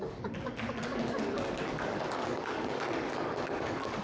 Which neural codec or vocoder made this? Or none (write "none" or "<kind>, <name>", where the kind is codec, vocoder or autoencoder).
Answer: codec, DAC